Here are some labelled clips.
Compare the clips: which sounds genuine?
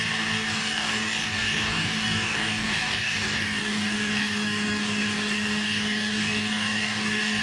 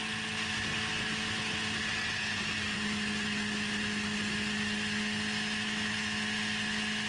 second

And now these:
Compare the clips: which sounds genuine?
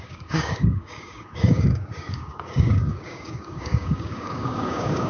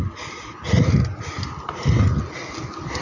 second